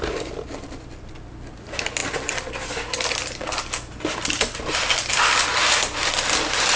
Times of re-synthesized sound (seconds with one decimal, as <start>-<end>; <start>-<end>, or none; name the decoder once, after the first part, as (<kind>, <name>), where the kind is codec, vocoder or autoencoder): none